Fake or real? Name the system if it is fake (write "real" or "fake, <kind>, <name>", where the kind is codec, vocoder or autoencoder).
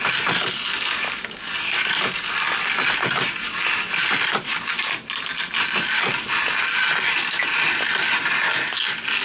real